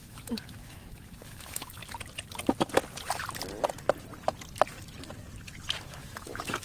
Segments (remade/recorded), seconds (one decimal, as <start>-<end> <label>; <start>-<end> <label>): 0.0-1.8 remade; 1.8-5.8 recorded; 5.8-6.6 remade